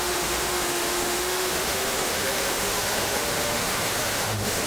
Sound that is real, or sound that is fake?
fake